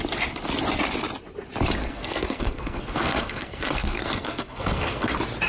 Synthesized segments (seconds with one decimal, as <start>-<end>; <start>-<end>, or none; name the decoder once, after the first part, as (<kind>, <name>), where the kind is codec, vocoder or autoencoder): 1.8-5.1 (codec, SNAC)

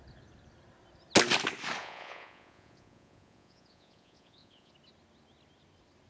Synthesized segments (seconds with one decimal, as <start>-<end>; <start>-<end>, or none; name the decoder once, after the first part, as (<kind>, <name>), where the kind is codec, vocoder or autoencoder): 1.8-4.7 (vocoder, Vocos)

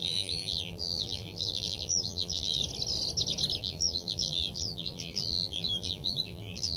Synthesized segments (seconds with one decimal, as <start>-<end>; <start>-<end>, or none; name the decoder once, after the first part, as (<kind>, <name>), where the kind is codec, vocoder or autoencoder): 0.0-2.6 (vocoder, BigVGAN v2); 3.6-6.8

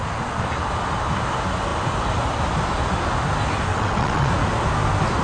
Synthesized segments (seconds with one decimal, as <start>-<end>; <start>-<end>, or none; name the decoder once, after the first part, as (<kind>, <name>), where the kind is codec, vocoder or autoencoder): 3.7-4.3 (vocoder, WaveNeXt)

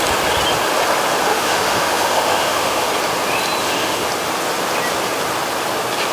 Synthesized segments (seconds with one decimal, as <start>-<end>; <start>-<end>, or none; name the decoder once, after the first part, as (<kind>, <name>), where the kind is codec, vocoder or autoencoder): 1.3-2.9 (autoencoder, DAC-VAE); 3.6-4.1

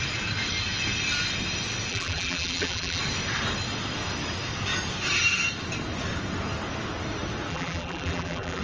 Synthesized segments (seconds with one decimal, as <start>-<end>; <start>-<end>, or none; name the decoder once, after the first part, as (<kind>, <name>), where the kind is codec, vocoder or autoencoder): 1.9-3.0 (vocoder, BigVGAN v2); 7.5-8.6

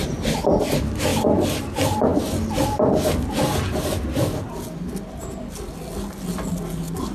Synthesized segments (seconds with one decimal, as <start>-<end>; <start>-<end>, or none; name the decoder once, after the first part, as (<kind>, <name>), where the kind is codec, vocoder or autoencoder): none